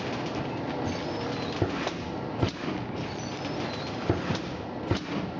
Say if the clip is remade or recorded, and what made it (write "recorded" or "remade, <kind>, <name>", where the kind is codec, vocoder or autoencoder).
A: recorded